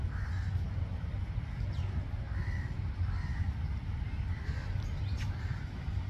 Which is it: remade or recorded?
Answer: recorded